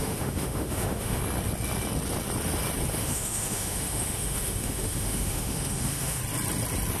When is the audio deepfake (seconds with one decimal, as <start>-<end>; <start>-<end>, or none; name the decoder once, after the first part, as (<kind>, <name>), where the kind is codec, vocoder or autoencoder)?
0.0-1.2 (autoencoder, DAC-VAE); 2.9-6.2